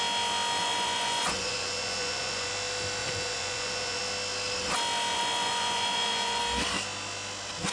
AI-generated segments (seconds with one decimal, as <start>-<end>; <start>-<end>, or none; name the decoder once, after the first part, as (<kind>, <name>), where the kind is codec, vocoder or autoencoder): 0.6-2.5 (vocoder, Vocos); 3.0-4.0; 5.1-6.4

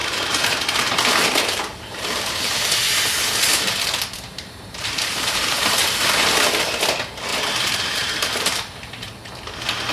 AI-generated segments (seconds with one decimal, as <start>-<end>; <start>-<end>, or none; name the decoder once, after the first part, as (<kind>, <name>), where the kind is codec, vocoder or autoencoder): 0.0-2.6 (vocoder, BigVGAN v2); 4.3-6.5; 7.3-9.1

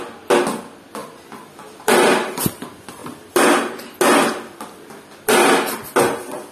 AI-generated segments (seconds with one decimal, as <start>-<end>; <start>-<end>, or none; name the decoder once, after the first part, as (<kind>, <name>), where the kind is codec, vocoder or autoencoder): 1.0-2.0 (vocoder, BigVGAN v2); 3.0-3.9

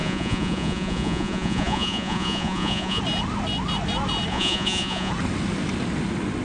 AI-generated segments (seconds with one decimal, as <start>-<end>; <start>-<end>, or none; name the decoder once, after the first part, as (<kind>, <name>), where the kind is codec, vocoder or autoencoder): 0.0-3.0 (vocoder, Vocos); 4.3-5.1

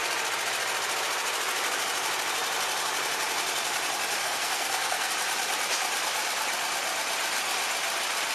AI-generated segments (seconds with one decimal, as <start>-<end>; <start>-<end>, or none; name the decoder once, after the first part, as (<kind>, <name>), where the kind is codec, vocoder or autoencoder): 4.2-5.1 (codec, SNAC)

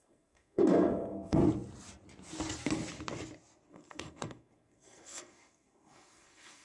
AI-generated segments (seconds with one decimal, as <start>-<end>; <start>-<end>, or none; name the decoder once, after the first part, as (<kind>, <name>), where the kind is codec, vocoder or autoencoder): 0.0-1.4 (codec, SNAC); 3.7-6.6

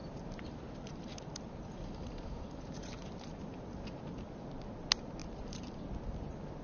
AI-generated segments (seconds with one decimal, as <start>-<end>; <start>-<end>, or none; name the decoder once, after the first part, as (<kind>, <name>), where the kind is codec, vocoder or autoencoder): 0.0-4.0 (vocoder, BigVGAN v2); 5.2-5.8

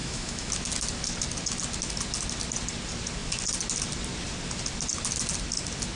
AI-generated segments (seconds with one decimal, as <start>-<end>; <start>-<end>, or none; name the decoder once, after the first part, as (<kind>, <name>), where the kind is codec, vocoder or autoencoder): 0.0-0.5 (autoencoder, DAC-VAE)